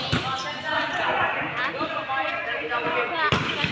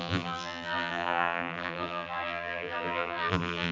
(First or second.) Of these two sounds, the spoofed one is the second